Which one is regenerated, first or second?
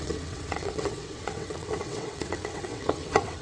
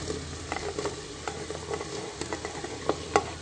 first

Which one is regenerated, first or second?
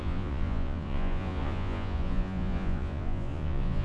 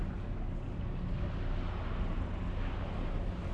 first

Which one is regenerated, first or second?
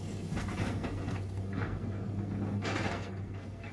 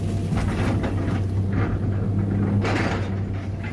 first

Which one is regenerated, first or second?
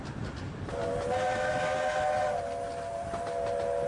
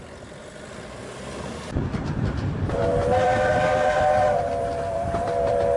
second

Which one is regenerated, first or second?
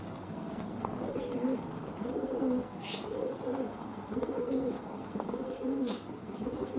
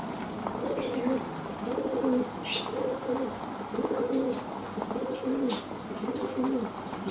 first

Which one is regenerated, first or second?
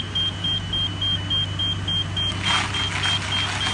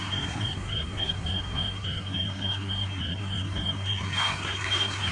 second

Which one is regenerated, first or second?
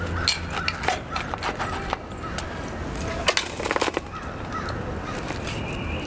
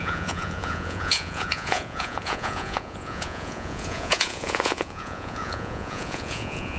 second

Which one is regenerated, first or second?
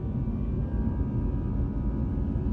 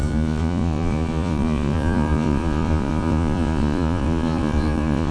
second